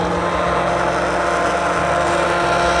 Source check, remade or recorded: recorded